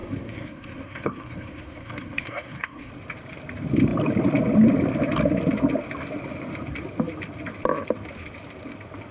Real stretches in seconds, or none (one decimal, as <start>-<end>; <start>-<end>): 2.9-9.1